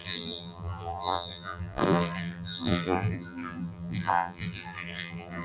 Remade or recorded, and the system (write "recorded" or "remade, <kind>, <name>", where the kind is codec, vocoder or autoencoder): remade, vocoder, BigVGAN v2